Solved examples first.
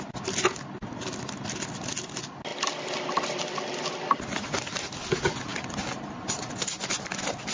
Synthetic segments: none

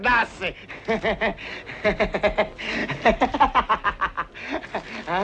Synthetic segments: 2.8-3.4 (vocoder, BigVGAN v2)

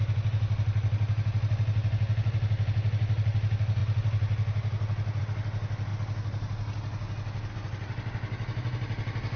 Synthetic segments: none

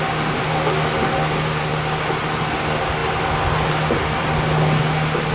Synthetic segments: none